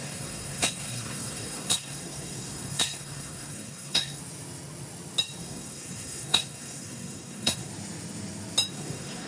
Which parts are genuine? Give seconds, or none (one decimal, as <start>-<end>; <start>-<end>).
4.2-5.4; 7.7-8.7